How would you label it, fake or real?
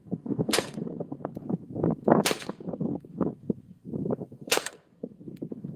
fake